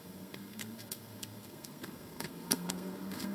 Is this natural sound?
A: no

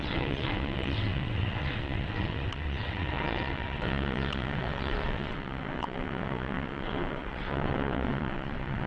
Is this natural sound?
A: no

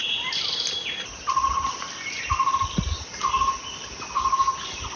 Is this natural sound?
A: yes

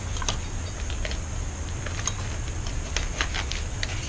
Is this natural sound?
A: yes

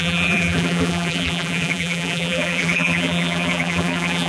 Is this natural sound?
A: no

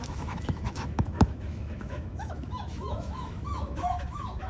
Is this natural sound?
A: no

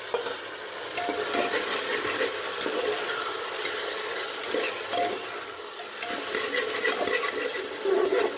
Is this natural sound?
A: yes